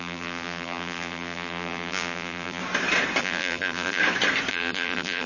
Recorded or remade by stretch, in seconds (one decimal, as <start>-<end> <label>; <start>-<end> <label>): 0.0-2.6 remade; 2.6-3.2 recorded; 3.2-4.0 remade; 4.0-4.5 recorded; 4.5-5.3 remade